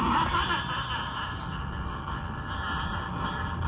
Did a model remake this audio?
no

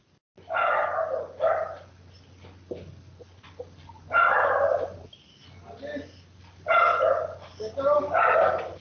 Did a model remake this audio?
no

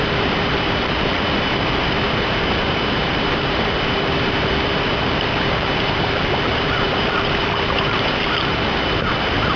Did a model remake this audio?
yes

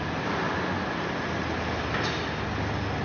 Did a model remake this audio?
no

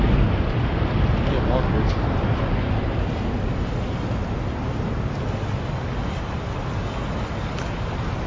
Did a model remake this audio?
no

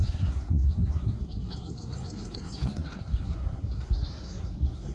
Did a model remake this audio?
yes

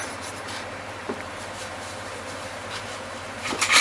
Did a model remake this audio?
yes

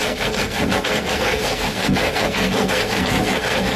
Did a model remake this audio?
yes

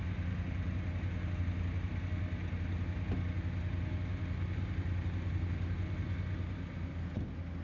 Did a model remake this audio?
no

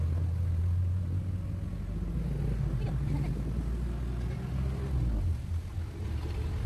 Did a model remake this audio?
no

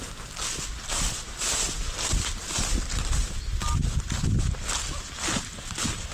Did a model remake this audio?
no